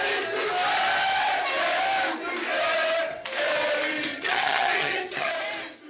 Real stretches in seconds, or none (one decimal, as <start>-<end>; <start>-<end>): 0.0-4.1; 5.3-5.9